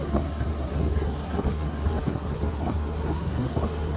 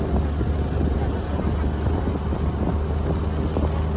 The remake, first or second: first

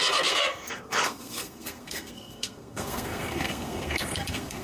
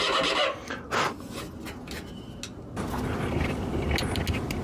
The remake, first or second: first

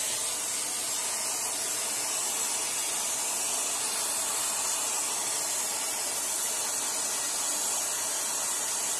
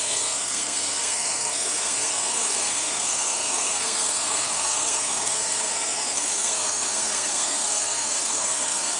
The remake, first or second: second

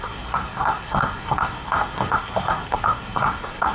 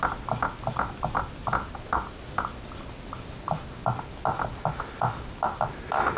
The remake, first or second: first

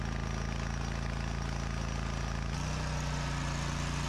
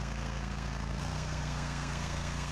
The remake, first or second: second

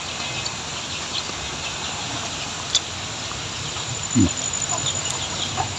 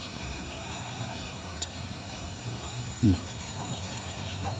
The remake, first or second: second